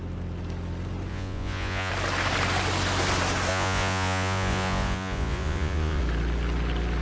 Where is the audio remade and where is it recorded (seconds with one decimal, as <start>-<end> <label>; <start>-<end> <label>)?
0.0-1.1 recorded; 1.1-1.9 remade; 1.9-3.5 recorded; 3.5-6.0 remade; 6.0-7.0 recorded